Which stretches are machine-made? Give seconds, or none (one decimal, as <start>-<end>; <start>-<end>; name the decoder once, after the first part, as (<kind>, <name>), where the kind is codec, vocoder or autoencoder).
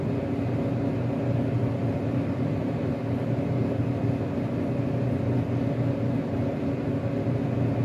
1.8-3.8 (vocoder, BigVGAN v2)